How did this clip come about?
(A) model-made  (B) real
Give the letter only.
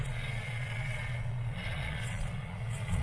A